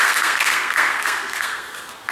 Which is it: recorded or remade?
remade